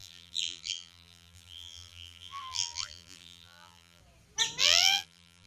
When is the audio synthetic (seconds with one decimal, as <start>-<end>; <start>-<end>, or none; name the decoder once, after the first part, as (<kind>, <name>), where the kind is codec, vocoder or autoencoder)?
0.0-4.0 (vocoder, BigVGAN v2); 4.6-5.5